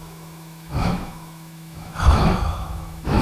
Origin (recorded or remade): remade